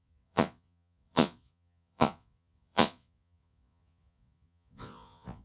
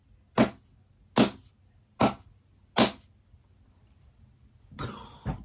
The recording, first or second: second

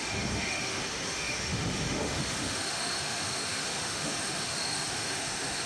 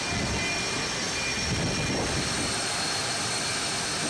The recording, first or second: second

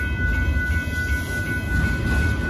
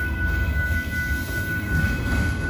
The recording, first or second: first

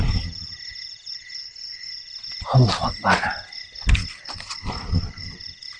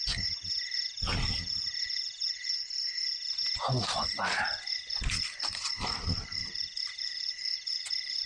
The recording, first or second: first